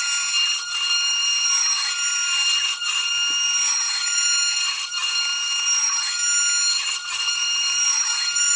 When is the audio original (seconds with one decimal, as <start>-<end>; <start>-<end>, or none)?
0.0-1.2; 3.1-4.0; 5.5-6.8

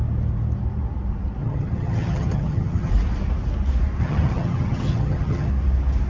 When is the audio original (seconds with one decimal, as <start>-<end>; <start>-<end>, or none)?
0.0-1.4; 2.9-4.0; 5.5-6.1

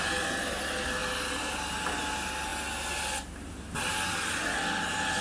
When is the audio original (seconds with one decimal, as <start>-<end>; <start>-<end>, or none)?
0.0-5.2

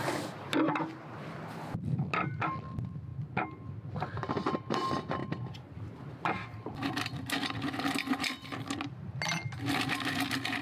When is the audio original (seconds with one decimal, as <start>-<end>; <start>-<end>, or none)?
0.0-10.6